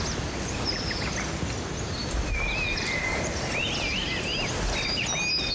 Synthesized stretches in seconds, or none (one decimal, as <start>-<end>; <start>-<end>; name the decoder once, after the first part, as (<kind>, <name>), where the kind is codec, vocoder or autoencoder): none